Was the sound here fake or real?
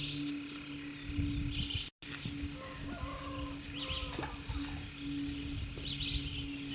real